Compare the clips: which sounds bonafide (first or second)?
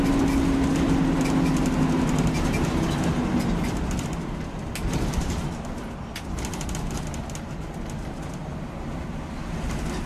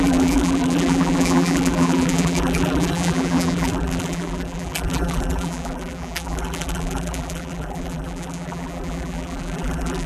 first